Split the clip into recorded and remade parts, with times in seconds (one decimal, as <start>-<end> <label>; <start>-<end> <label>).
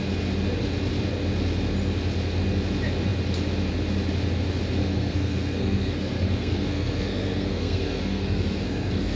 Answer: 0.0-4.8 recorded; 4.8-9.2 remade